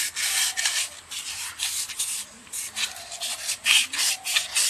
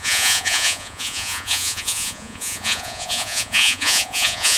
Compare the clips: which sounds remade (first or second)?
second